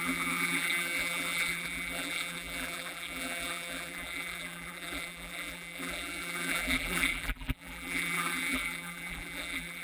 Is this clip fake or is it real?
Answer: fake